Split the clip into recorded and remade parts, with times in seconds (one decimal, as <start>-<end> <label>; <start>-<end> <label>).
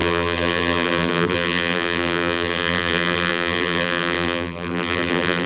0.0-5.5 remade